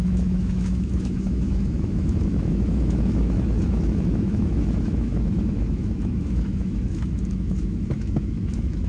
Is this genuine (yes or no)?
no